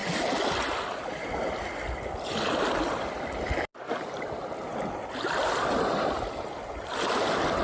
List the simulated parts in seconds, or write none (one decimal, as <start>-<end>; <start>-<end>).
none